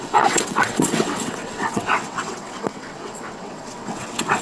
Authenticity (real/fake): fake